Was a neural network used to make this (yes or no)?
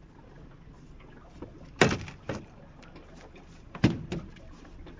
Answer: no